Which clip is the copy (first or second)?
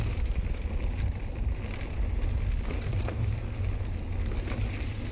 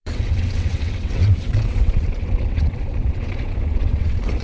second